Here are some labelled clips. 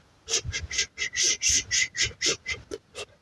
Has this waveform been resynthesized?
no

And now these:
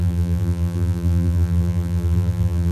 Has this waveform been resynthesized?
yes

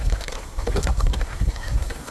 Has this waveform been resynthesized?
yes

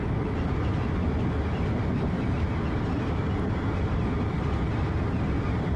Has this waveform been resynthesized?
no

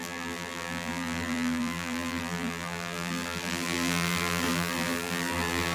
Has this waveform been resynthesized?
yes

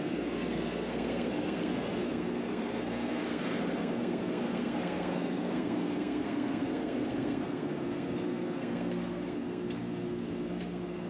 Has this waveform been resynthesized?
yes